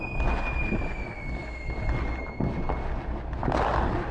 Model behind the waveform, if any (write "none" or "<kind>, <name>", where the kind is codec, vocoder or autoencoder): none